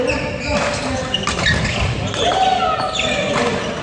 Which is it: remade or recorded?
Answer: recorded